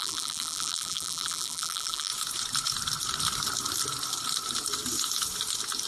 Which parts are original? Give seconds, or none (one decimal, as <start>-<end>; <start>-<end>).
2.1-5.9